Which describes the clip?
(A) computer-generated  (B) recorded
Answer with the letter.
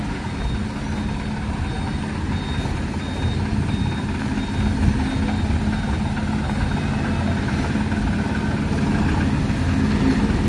B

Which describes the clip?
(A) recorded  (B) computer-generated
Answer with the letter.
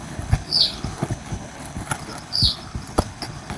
B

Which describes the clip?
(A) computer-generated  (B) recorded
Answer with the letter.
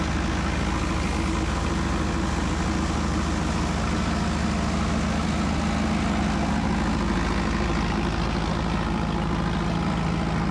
B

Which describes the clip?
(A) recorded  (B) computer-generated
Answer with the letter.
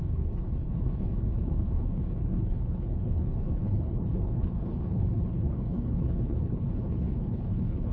B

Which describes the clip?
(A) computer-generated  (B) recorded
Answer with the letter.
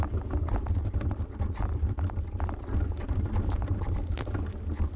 B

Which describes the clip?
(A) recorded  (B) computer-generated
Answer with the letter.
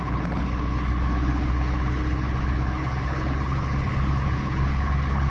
B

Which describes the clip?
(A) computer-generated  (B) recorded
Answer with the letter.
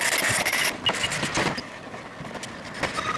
B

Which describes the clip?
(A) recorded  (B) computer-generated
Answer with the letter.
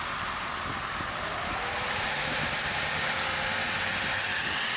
A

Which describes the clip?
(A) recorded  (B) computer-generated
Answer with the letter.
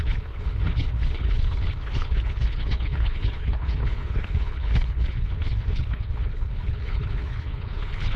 B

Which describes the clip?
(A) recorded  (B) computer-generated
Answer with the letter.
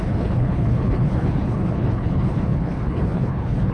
B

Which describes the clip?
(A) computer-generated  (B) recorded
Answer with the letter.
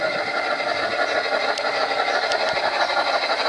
B